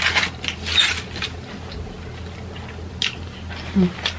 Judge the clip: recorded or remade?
recorded